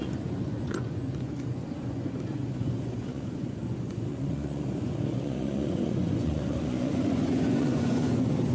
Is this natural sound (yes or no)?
no